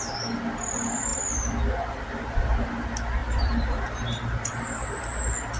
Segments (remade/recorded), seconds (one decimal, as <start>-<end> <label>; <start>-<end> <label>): 0.0-1.1 recorded; 1.1-1.6 remade; 1.6-3.2 recorded; 3.2-5.0 remade; 5.0-5.6 recorded